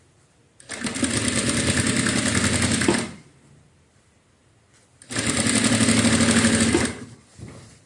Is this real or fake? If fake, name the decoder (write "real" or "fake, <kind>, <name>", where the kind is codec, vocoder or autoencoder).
real